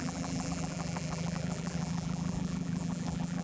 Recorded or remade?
remade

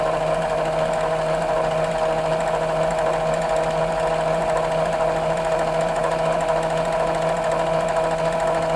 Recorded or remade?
recorded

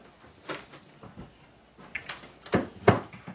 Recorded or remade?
recorded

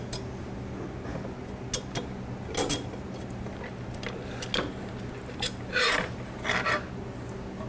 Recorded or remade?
recorded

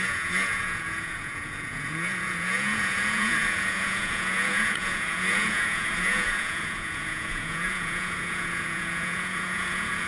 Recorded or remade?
remade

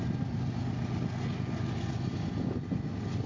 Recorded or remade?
recorded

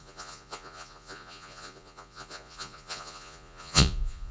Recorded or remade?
remade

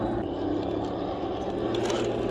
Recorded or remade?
recorded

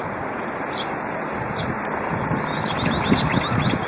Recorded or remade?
recorded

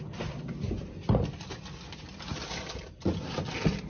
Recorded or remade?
recorded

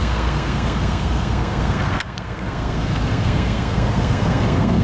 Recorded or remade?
remade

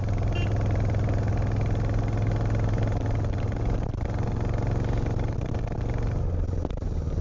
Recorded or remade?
recorded